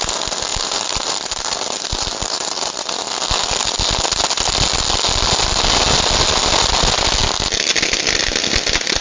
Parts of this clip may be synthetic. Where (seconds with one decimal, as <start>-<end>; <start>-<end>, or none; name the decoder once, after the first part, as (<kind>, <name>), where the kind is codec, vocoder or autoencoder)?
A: 0.5-2.8 (vocoder, BigVGAN v2)